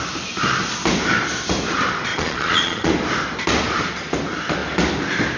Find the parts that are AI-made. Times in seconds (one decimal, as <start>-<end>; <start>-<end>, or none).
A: 2.1-2.9

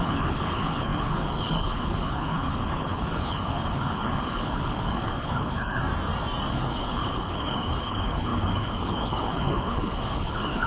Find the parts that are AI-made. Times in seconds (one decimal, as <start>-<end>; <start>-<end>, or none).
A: 0.0-5.8; 6.5-10.7

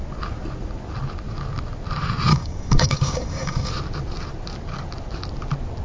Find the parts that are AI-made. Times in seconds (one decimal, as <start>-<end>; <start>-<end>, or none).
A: 2.3-3.7